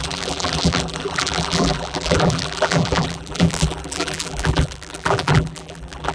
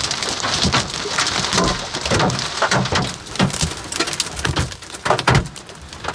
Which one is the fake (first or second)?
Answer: first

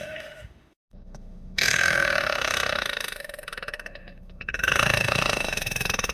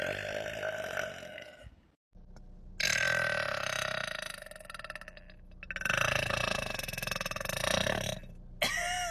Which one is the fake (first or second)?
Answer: first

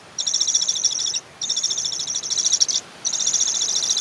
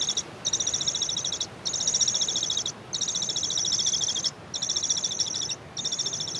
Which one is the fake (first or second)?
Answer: first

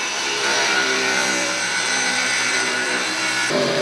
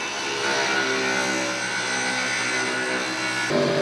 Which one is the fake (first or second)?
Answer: first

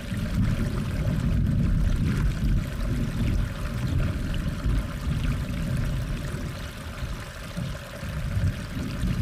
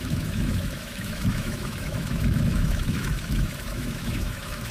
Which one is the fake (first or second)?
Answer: second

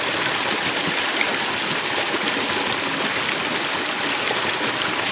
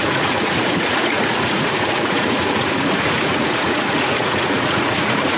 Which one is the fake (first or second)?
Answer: second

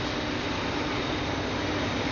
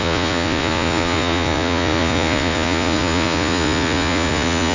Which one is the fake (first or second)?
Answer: second